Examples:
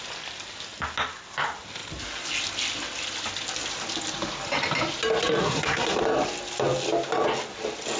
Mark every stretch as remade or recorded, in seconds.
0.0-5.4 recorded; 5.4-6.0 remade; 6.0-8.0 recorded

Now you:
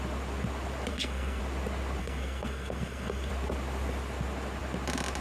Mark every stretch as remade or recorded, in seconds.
0.0-0.9 recorded; 0.9-1.4 remade; 1.4-2.0 recorded; 2.0-3.3 remade; 3.3-5.2 recorded